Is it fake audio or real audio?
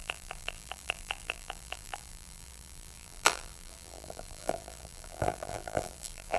fake